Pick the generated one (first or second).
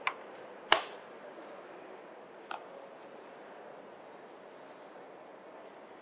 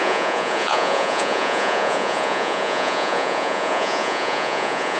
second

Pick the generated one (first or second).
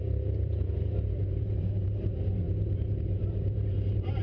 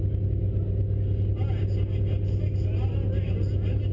first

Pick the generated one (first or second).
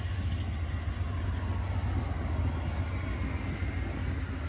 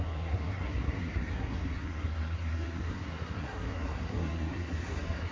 second